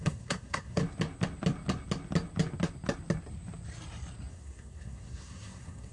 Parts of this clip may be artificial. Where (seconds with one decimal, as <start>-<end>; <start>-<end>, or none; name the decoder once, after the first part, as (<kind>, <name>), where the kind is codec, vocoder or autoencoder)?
0.0-0.8 (codec, SNAC); 4.3-5.9